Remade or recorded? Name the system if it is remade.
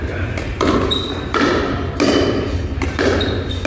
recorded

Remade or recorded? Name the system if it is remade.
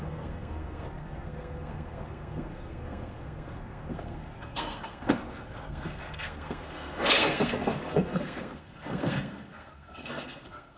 remade, codec, SNAC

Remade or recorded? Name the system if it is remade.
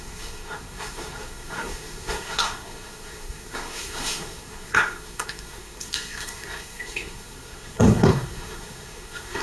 remade, codec, SNAC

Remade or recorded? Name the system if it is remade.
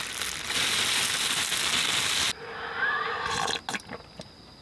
recorded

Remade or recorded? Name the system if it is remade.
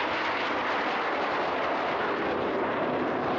recorded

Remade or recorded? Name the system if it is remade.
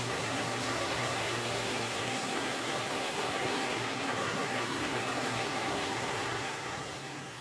remade, codec, SNAC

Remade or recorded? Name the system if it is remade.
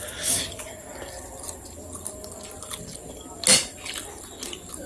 recorded